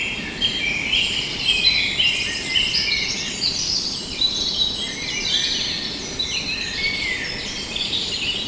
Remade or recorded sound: recorded